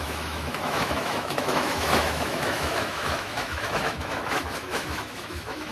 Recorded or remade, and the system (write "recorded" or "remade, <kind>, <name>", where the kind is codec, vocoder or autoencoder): remade, autoencoder, DAC-VAE